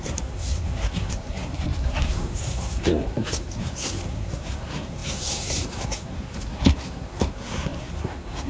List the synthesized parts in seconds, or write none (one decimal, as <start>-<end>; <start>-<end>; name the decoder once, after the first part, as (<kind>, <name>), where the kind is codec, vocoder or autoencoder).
0.0-8.5 (codec, SNAC)